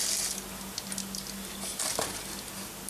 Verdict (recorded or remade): recorded